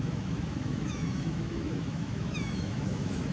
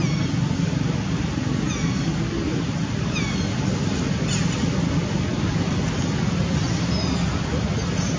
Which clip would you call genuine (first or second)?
second